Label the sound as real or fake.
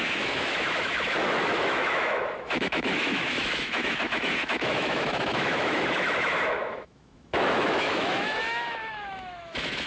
fake